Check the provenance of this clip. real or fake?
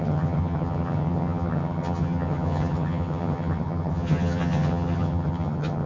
fake